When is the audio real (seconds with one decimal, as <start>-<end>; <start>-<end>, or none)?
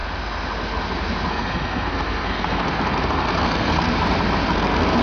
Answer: 0.0-1.3; 3.9-4.5